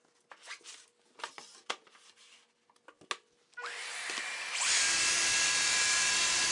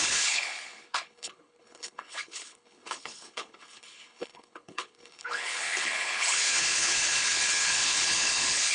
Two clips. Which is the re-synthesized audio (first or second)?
second